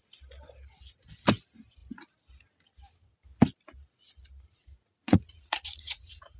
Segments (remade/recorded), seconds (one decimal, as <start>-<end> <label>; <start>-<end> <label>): 0.0-4.6 recorded; 4.6-6.4 remade